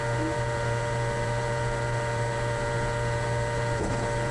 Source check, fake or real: fake